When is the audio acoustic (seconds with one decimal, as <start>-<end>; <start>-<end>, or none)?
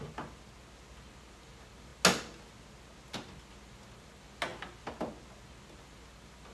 0.0-6.5